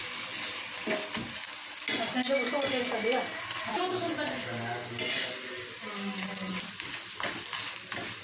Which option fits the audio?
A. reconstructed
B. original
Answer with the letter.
B